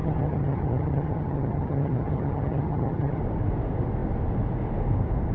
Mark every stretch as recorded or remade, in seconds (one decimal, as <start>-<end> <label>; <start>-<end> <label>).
0.0-3.2 remade; 3.2-5.3 recorded